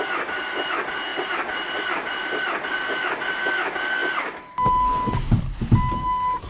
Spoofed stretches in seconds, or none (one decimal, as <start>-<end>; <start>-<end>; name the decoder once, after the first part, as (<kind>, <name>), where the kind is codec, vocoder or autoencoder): none